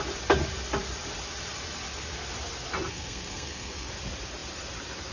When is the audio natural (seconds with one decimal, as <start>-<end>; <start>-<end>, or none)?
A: 0.0-2.9; 3.9-5.1